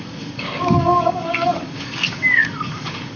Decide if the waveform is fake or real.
fake